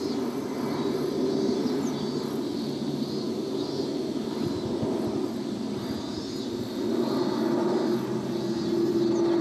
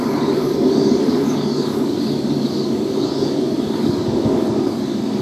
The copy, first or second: second